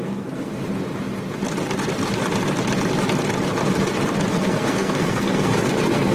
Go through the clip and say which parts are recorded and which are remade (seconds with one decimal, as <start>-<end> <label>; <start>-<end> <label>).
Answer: 0.0-0.6 remade; 0.6-4.3 recorded; 4.3-6.1 remade